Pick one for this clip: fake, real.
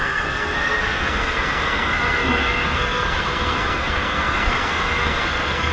fake